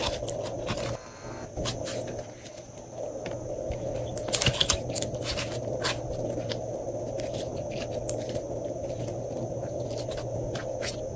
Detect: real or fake real